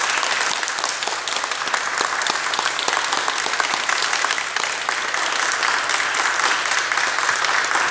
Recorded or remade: recorded